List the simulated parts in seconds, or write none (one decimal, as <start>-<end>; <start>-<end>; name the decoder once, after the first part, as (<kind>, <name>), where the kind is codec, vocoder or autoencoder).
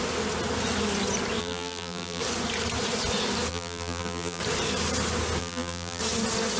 1.4-2.2 (vocoder, BigVGAN v2); 3.5-4.4; 5.4-6.0